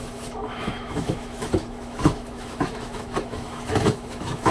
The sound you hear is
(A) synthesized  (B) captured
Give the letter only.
A